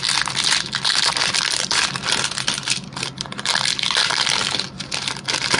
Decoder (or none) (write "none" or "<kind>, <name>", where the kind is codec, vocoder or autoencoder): none